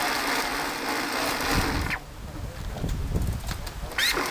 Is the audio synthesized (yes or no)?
no